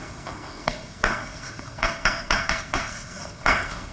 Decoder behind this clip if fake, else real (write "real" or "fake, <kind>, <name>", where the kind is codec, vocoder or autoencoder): fake, codec, SNAC